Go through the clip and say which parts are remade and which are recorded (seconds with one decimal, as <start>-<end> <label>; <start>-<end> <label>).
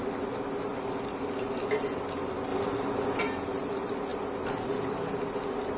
0.0-5.8 recorded